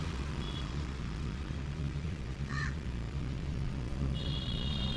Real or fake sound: fake